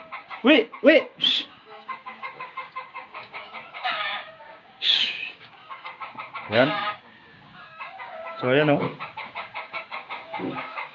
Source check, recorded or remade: remade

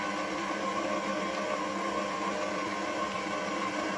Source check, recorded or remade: recorded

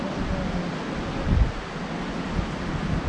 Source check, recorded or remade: recorded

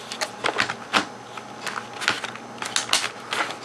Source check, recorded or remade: recorded